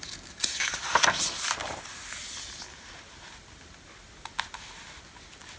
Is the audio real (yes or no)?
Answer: yes